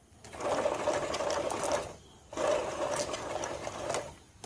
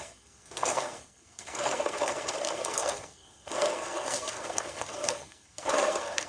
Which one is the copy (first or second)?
second